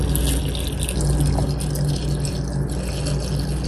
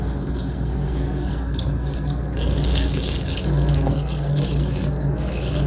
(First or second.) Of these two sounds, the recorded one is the first